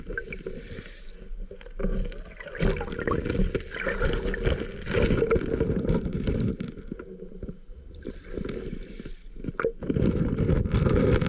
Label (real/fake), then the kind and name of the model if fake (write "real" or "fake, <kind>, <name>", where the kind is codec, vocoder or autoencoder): real